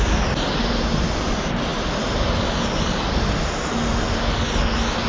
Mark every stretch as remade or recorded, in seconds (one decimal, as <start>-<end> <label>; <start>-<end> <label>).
0.0-5.1 recorded